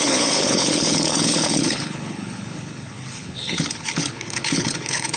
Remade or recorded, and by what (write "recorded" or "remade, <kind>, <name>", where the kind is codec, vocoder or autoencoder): remade, codec, HILCodec